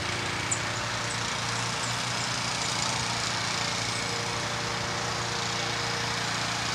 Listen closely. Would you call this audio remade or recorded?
recorded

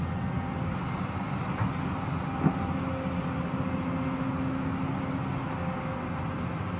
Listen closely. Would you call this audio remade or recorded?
recorded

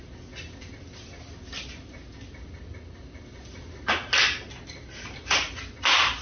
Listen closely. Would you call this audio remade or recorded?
recorded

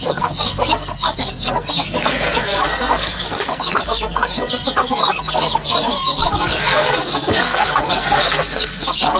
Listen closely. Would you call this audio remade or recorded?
remade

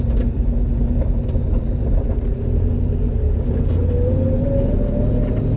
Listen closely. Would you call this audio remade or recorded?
recorded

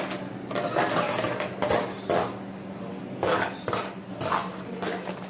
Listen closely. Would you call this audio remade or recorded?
recorded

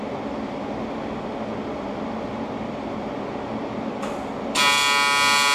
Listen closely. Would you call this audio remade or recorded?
recorded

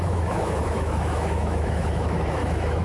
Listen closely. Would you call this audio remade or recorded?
remade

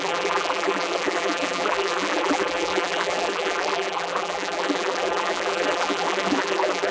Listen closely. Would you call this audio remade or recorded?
remade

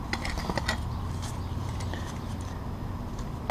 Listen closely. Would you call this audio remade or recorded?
recorded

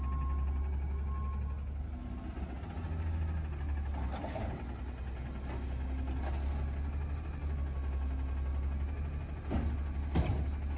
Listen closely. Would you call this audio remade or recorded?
recorded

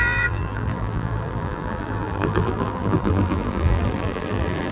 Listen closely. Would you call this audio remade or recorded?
remade